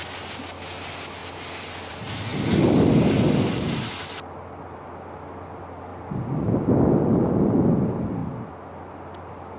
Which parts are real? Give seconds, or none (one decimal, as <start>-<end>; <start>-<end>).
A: 0.0-5.9; 6.9-9.6